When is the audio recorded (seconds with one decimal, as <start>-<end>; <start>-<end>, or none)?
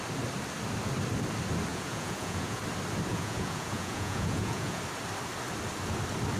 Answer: 0.0-1.7; 2.6-3.1; 4.8-6.4